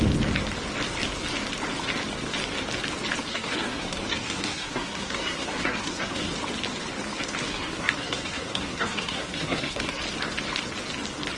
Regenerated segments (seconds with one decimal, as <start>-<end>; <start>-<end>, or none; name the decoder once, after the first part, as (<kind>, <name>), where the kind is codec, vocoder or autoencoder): 3.3-6.3 (codec, SNAC); 7.5-10.0